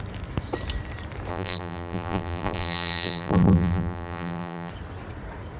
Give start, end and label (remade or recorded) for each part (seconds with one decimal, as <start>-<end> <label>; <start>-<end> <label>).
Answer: 0.0-1.3 recorded; 1.3-4.7 remade; 4.7-5.6 recorded